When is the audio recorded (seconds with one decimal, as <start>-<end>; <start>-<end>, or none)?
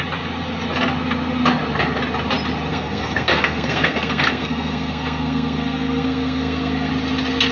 0.0-2.7; 6.9-7.5